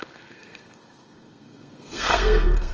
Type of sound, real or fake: fake